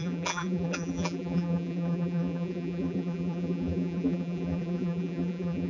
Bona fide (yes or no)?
no